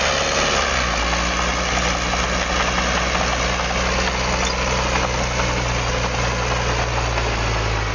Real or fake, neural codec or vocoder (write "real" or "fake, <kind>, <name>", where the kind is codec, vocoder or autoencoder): real